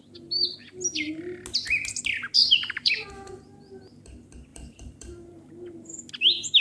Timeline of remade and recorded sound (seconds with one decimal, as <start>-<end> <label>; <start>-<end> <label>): 0.0-2.4 recorded; 2.4-3.1 remade; 3.1-4.5 recorded; 4.5-5.5 remade; 5.5-6.6 recorded